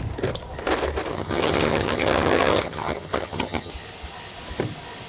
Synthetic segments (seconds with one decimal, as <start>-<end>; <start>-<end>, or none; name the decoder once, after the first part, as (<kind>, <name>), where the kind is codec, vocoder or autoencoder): 1.1-3.7 (vocoder, HiFi-GAN)